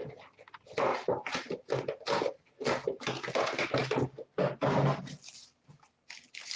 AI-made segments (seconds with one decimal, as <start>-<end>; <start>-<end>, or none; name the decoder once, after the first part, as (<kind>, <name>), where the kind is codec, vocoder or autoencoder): none